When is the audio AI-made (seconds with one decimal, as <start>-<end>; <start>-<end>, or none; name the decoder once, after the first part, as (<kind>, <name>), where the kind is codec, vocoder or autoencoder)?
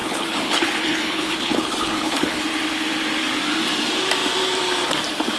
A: 0.0-2.4 (codec, HILCodec)